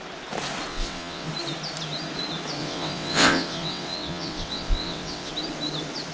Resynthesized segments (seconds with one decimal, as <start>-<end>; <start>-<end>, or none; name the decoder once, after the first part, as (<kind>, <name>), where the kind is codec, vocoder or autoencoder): 0.7-1.3 (vocoder, WaveNeXt); 2.6-5.3